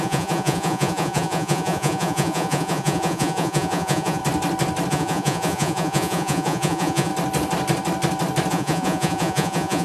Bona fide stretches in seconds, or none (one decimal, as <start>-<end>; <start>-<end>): 4.2-4.9; 7.1-8.5